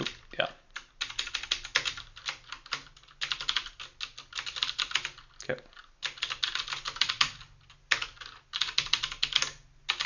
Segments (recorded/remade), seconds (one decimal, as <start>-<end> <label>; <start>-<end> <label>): 0.0-10.1 recorded